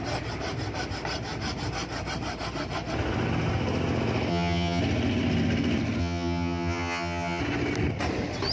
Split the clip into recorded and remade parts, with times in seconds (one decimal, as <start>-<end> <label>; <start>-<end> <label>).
0.0-4.3 recorded; 4.3-4.8 remade; 4.8-6.0 recorded; 6.0-7.4 remade; 7.4-8.5 recorded